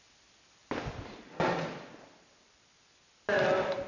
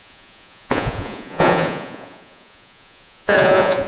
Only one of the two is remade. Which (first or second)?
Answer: second